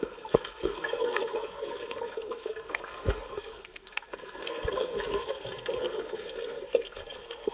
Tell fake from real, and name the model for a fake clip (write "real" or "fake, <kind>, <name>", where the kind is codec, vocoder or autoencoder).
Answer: fake, codec, SNAC